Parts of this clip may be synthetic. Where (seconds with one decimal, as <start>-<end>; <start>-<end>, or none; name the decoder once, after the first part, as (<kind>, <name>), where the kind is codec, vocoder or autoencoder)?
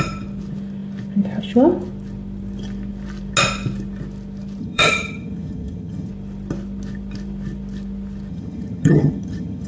4.6-6.1 (vocoder, HiFi-GAN); 8.3-9.7